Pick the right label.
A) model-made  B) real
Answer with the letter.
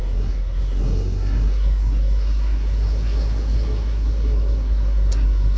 A